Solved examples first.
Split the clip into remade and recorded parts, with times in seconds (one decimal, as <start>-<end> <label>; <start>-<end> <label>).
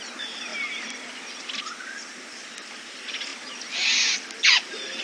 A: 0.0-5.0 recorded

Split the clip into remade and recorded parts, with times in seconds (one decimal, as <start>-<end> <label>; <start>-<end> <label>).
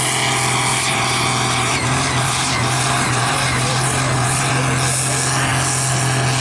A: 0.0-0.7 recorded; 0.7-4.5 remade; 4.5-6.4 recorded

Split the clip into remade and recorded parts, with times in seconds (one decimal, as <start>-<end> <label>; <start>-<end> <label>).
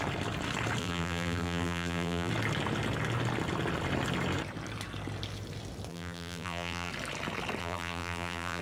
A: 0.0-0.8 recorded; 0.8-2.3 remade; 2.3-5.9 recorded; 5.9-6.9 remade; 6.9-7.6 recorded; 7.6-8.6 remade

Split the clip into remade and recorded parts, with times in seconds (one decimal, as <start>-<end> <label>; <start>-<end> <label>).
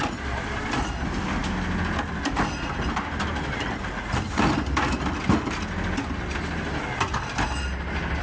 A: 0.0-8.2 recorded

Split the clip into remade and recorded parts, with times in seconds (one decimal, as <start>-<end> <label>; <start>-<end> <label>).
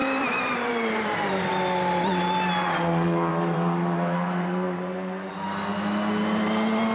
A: 0.0-1.5 remade; 1.5-3.3 recorded; 3.3-5.3 remade; 5.3-6.9 recorded